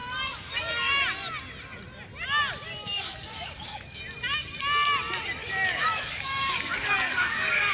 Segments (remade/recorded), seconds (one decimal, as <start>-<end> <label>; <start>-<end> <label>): 0.0-1.0 remade; 1.0-2.8 recorded; 2.8-4.0 remade; 4.0-5.4 recorded; 5.4-7.7 remade